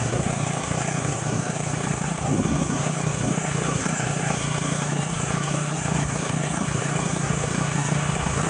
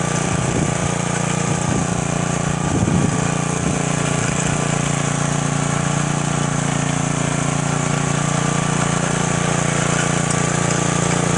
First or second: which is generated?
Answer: first